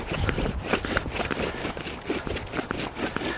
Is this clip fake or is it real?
real